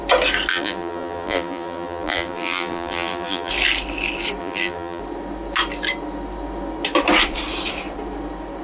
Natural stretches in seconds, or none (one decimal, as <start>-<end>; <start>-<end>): 0.0-0.5; 3.5-4.4; 5.0-8.6